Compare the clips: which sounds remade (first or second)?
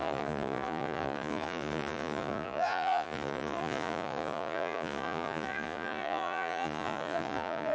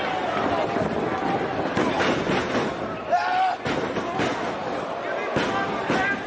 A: first